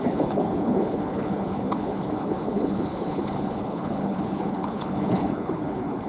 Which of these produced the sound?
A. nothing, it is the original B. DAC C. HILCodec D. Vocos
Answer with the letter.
C